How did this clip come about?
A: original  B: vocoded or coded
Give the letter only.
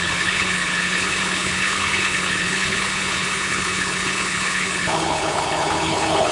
B